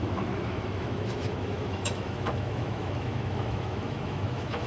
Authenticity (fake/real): fake